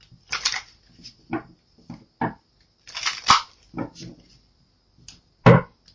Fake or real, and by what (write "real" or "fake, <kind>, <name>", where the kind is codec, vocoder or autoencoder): real